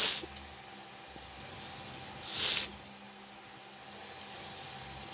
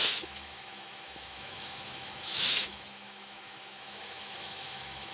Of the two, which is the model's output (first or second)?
second